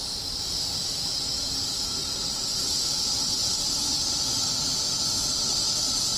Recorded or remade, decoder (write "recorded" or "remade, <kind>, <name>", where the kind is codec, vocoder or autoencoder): recorded